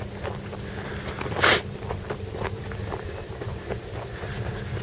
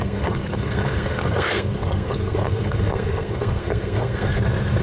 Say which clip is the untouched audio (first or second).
first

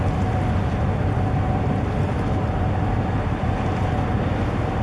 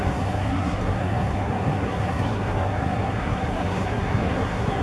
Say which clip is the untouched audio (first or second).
first